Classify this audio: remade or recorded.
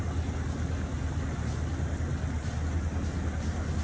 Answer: recorded